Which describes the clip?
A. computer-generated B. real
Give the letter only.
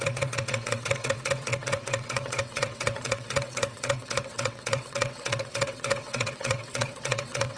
A